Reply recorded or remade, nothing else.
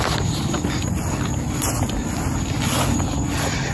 recorded